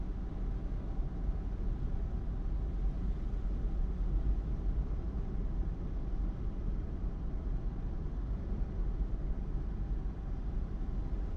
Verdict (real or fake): real